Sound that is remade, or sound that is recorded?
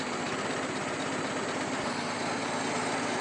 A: recorded